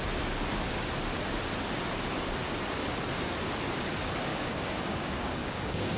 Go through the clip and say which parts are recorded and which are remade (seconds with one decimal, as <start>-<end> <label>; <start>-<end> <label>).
0.0-4.3 recorded; 4.3-6.0 remade